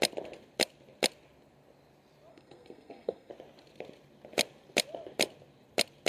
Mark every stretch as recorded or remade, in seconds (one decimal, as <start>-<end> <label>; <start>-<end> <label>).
0.0-2.3 recorded; 2.3-3.3 remade; 3.3-6.1 recorded